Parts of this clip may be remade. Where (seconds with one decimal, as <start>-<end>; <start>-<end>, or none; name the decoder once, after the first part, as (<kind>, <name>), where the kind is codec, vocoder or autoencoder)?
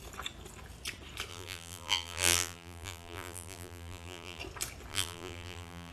1.3-4.4 (vocoder, BigVGAN v2); 4.9-5.9